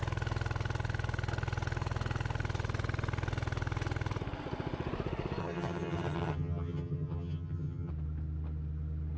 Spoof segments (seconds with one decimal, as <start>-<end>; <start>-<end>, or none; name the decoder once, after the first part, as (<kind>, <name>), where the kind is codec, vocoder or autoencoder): 5.4-7.9 (vocoder, HiFi-GAN)